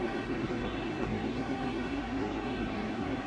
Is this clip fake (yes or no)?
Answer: yes